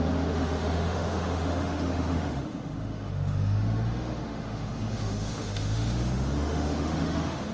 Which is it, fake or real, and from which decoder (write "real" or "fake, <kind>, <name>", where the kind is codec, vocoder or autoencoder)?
fake, autoencoder, DAC-VAE